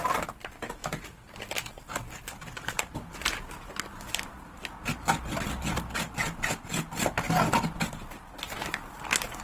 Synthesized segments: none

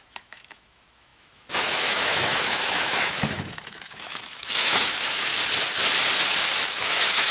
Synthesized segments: 0.0-5.3 (autoencoder, DAC-VAE); 6.7-7.3

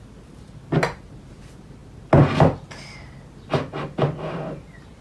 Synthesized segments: none

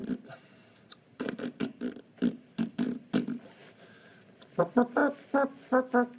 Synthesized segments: 0.0-3.0 (vocoder, BigVGAN v2)

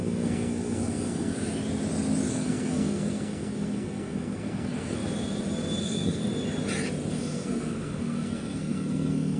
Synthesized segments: 0.0-1.3 (codec, SNAC); 2.3-5.0; 5.8-6.2; 7.1-9.4